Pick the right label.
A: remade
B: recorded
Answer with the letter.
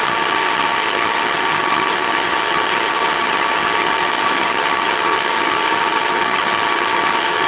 A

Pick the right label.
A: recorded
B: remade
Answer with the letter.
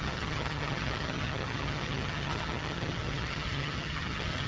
B